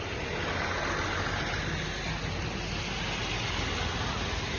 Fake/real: real